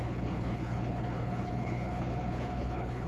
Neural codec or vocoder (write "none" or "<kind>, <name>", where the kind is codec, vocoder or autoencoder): codec, HILCodec